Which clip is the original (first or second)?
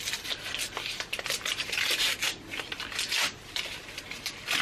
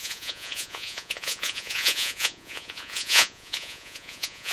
first